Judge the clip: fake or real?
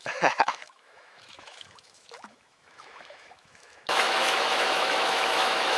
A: fake